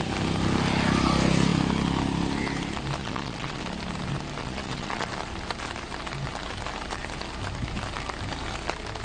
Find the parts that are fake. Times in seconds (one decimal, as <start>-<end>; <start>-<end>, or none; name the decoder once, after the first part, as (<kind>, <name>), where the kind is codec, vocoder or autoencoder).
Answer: 3.0-3.6 (vocoder, Vocos); 4.4-5.1